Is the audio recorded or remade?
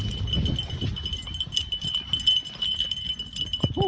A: recorded